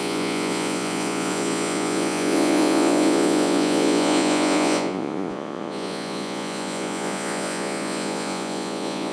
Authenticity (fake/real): fake